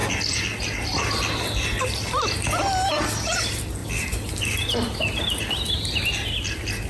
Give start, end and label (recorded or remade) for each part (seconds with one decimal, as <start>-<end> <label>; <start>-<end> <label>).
0.0-6.9 recorded